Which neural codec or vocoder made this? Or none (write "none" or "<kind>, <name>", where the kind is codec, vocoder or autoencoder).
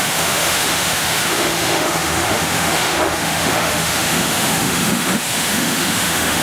autoencoder, DAC-VAE